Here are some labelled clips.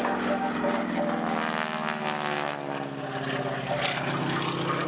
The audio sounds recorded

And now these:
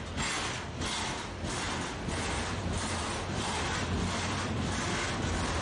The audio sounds recorded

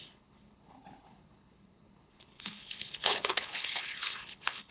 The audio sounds remade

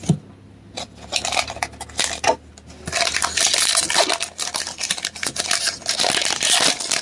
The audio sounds recorded